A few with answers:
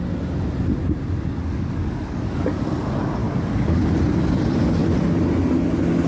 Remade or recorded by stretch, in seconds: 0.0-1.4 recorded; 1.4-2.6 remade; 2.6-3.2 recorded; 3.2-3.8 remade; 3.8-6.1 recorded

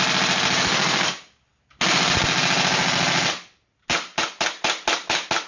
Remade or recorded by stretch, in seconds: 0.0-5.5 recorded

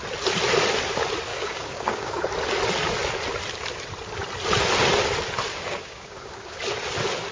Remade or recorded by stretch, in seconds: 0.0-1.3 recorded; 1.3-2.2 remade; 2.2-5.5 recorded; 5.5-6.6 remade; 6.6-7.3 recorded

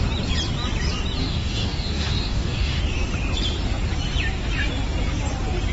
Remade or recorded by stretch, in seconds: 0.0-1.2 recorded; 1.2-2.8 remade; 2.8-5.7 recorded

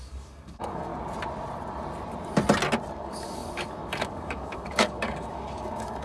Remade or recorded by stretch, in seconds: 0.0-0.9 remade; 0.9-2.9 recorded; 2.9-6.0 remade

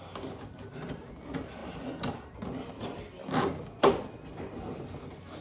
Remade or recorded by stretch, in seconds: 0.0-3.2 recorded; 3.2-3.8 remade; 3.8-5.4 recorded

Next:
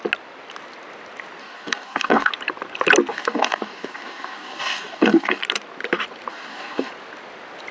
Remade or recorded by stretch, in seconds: 0.0-1.4 recorded; 1.4-2.3 remade; 2.3-3.1 recorded; 3.1-5.4 remade; 5.4-6.3 recorded; 6.3-6.9 remade; 6.9-7.7 recorded

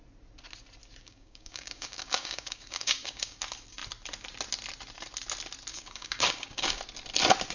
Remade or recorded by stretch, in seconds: 0.0-1.0 recorded; 1.0-3.4 remade; 3.4-5.7 recorded; 5.7-6.8 remade; 6.8-7.5 recorded